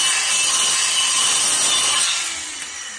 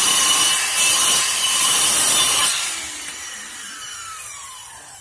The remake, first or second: second